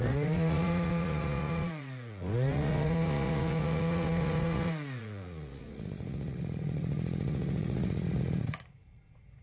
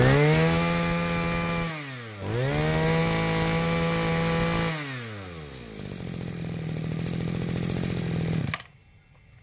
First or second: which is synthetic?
first